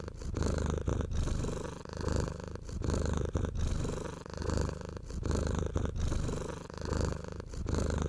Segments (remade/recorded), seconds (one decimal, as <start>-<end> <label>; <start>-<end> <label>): 0.0-0.9 recorded; 0.9-3.7 remade; 3.7-4.4 recorded; 4.4-5.7 remade; 5.7-8.1 recorded